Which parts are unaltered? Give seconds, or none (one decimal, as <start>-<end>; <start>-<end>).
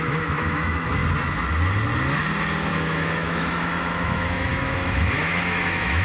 1.0-2.7